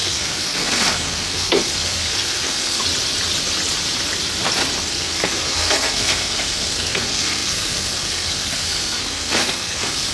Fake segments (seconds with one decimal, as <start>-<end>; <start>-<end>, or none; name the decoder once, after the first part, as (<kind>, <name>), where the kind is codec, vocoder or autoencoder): 0.0-2.8 (codec, SNAC); 4.9-10.1